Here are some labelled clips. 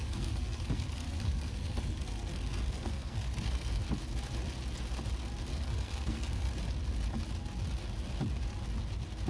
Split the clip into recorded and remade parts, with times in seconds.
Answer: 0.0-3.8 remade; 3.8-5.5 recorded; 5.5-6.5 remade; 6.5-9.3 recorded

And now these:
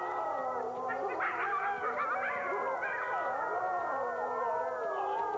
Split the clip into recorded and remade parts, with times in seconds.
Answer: 0.0-5.4 recorded

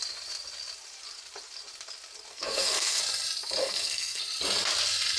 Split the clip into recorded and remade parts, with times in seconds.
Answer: 0.0-2.3 recorded; 2.3-3.0 remade; 3.0-3.6 recorded; 3.6-4.2 remade; 4.2-5.2 recorded

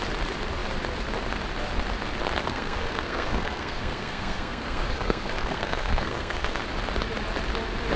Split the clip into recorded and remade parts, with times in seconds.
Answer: 0.0-2.4 recorded; 2.4-6.6 remade; 6.6-8.0 recorded

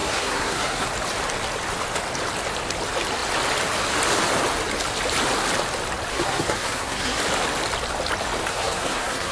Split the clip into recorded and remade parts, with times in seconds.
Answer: 0.0-0.9 remade; 0.9-6.1 recorded; 6.1-7.2 remade; 7.2-8.5 recorded; 8.5-9.3 remade

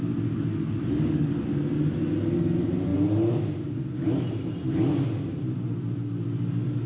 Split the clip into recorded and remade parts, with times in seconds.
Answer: 0.0-6.9 recorded

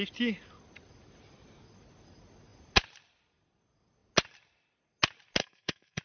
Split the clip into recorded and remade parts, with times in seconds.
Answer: 0.0-5.4 recorded; 5.4-6.0 remade